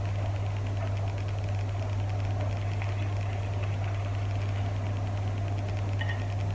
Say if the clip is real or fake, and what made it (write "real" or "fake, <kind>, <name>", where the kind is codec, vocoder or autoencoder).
real